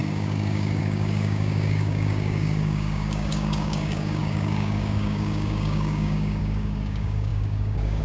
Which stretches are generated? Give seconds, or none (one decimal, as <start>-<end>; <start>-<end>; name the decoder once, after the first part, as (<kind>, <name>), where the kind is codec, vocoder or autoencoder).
0.0-8.0 (codec, DAC)